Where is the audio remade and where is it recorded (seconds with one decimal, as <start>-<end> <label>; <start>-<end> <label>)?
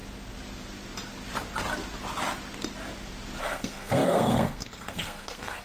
0.0-3.4 recorded; 3.4-5.6 remade